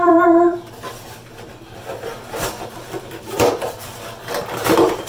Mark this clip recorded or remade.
remade